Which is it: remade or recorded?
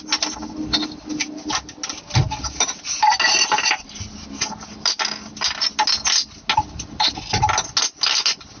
recorded